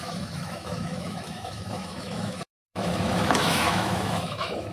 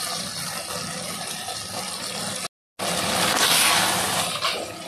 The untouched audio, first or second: second